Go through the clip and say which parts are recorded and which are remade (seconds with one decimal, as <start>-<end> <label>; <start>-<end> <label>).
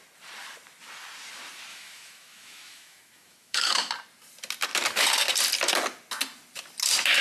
0.0-1.7 recorded; 1.7-3.9 remade; 3.9-7.2 recorded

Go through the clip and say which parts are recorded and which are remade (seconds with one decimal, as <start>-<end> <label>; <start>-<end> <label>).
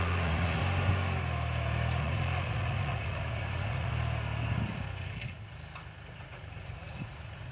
0.0-0.6 remade; 0.6-2.0 recorded; 2.0-3.9 remade; 3.9-6.1 recorded; 6.1-7.5 remade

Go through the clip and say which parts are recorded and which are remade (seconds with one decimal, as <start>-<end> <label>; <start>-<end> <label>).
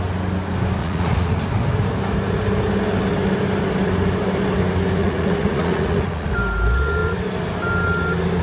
0.0-0.8 recorded; 0.8-1.4 remade; 1.4-5.0 recorded; 5.0-6.3 remade; 6.3-8.4 recorded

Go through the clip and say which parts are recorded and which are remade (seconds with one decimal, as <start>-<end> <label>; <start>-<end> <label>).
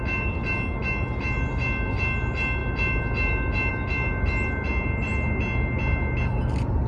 0.0-6.9 recorded